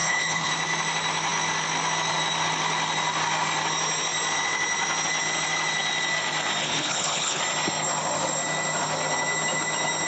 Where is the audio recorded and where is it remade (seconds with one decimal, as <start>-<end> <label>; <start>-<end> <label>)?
0.0-0.5 remade; 0.5-6.6 recorded; 6.6-7.4 remade; 7.4-10.1 recorded